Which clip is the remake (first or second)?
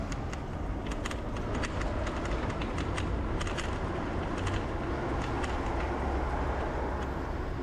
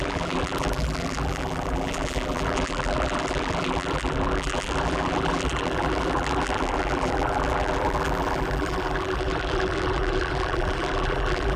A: second